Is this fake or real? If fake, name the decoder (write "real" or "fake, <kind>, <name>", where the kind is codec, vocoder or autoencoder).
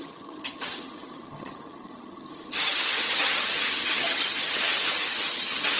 fake, vocoder, HiFi-GAN